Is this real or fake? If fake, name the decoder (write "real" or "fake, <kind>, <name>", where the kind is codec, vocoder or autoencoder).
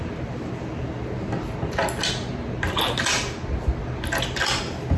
real